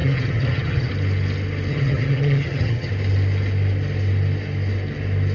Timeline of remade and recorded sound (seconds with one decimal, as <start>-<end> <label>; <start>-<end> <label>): 0.0-0.9 remade; 0.9-1.7 recorded; 1.7-2.9 remade; 2.9-5.3 recorded